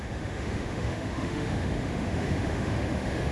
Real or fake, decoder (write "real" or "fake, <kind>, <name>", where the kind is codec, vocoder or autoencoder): fake, autoencoder, DAC-VAE